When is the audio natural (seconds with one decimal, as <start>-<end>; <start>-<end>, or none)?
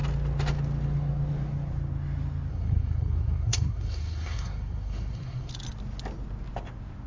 0.0-2.5; 5.5-7.1